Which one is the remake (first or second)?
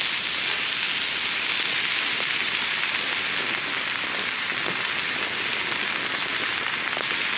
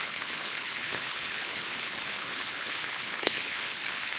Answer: second